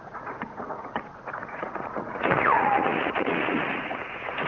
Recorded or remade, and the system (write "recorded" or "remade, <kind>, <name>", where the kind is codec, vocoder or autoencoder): remade, vocoder, Vocos